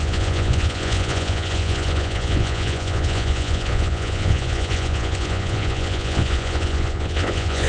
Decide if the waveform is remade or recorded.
remade